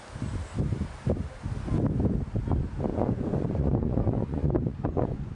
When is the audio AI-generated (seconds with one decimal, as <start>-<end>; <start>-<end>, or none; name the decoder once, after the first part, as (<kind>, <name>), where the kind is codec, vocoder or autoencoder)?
2.9-5.3 (vocoder, Vocos)